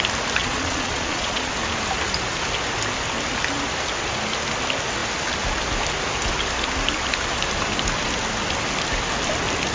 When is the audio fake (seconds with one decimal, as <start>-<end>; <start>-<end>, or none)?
0.4-1.5